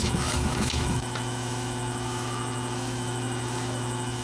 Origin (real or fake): fake